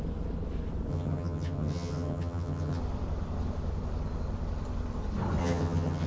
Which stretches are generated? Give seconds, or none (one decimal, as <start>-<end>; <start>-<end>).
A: 0.9-2.8; 5.4-6.1